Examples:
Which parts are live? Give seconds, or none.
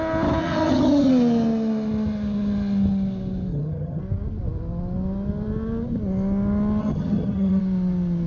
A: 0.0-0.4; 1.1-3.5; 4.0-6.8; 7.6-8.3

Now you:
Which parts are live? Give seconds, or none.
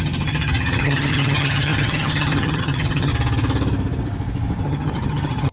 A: 3.1-4.6